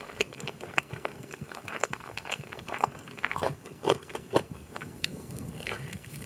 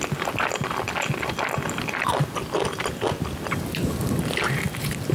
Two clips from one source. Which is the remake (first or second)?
first